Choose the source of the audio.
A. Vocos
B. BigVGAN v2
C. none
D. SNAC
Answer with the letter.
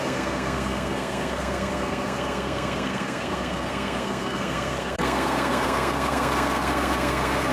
D